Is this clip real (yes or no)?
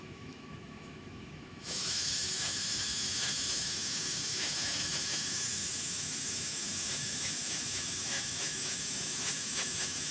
no